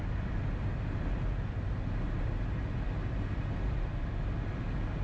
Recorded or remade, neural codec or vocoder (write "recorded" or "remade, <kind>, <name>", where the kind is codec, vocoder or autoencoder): recorded